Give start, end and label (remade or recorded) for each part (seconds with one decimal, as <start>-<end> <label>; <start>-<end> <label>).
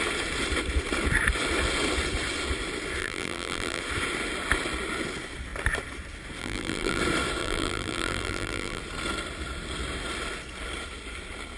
0.0-3.0 recorded; 3.0-3.8 remade; 3.8-6.4 recorded; 6.4-7.0 remade; 7.0-7.4 recorded; 7.4-8.8 remade; 8.8-11.6 recorded